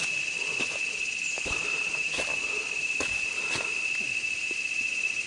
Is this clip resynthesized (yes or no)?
no